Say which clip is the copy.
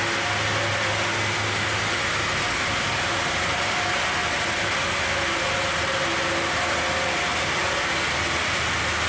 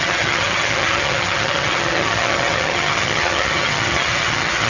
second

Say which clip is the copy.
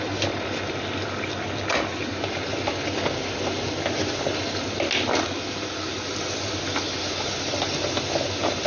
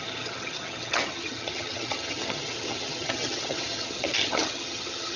second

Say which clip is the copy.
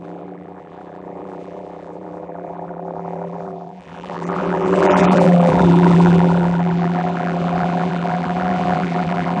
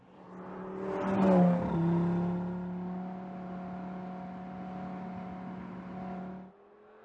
first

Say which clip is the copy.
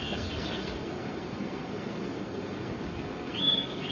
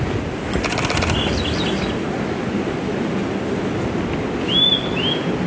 first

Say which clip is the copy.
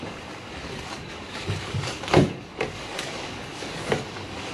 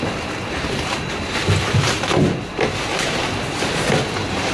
first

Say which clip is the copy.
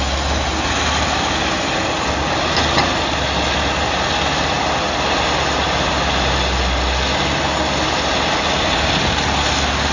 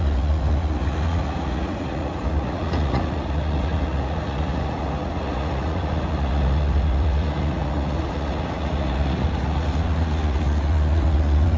second